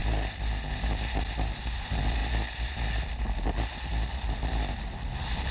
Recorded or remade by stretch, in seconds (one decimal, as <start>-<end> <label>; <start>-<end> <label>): 0.0-5.5 recorded